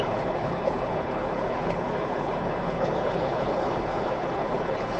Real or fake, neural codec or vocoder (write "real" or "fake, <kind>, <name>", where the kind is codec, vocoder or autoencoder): fake, codec, HILCodec